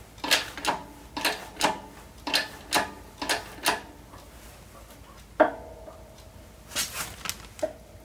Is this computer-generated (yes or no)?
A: no